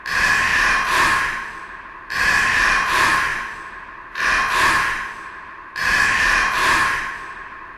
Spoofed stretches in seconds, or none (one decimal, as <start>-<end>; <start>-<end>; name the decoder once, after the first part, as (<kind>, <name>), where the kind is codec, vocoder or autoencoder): 0.0-0.5 (vocoder, BigVGAN v2); 2.1-3.3; 5.7-6.6; 7.1-7.8